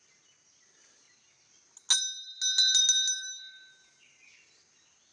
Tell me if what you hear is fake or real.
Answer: real